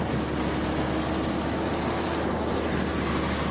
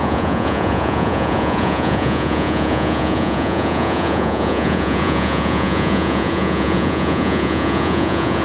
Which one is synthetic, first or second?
second